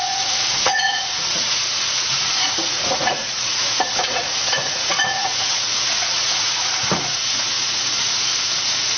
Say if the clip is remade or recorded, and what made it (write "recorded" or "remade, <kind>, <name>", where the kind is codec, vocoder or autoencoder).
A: remade, vocoder, Vocos